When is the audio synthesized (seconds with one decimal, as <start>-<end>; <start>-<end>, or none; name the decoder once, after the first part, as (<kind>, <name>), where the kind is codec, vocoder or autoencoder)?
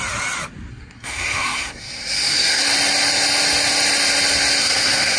0.7-2.6 (codec, SNAC); 4.6-5.2